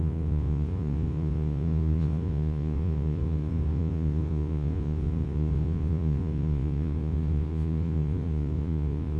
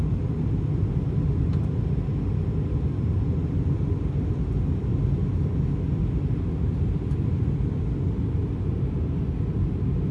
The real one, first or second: second